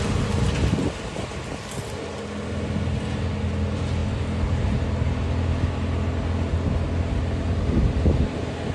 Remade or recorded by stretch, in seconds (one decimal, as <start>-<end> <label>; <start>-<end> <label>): 0.0-8.7 recorded